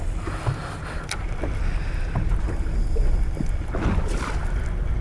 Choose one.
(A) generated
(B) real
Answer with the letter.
B